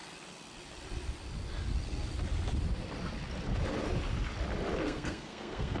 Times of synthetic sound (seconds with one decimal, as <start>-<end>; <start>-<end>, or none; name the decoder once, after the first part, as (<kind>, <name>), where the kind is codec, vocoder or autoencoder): 4.8-5.8 (codec, SNAC)